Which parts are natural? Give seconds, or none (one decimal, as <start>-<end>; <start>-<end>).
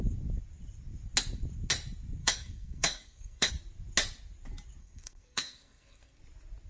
0.0-2.2; 3.5-4.8; 6.2-6.7